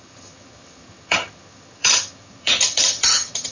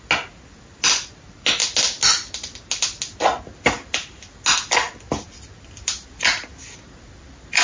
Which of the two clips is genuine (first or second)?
second